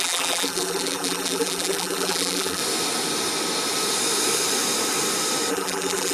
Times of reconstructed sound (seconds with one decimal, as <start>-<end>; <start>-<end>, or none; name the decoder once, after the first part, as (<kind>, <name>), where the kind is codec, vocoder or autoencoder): 0.0-2.6 (vocoder, BigVGAN v2); 5.5-6.1